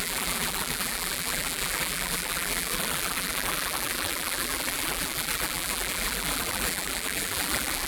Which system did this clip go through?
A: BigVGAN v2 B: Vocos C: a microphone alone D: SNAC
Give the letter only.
A